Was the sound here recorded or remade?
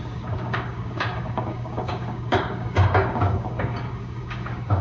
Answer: remade